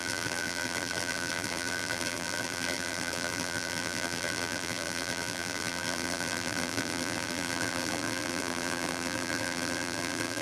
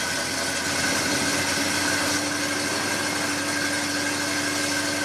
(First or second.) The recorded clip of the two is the second